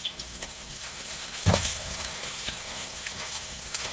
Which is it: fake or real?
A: fake